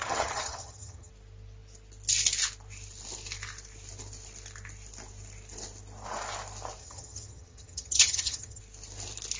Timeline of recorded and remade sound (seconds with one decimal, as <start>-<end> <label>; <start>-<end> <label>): 0.0-1.1 remade; 1.1-6.8 recorded; 6.8-8.6 remade; 8.6-9.4 recorded